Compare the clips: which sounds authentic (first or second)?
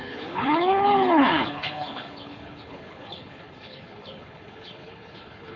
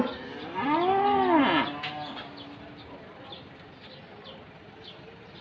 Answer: second